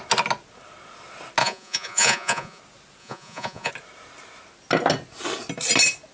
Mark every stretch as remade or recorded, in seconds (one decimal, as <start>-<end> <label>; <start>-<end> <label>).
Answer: 0.0-1.4 recorded; 1.4-2.6 remade; 2.6-3.0 recorded; 3.0-3.7 remade; 3.7-6.1 recorded